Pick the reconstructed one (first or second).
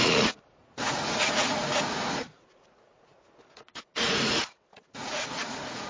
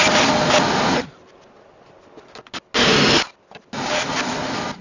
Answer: first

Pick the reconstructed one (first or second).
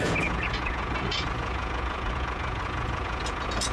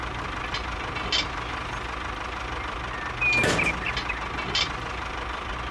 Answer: first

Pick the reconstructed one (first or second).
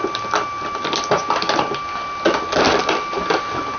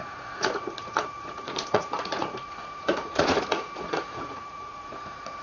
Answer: second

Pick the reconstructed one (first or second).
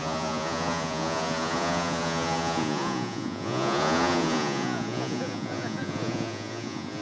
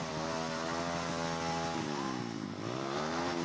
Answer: first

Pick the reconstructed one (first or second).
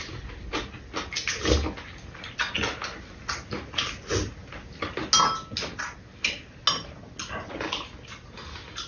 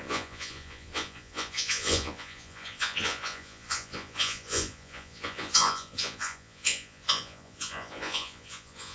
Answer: second